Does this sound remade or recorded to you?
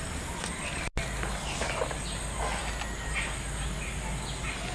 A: recorded